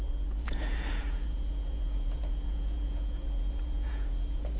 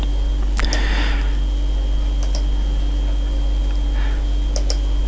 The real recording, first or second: second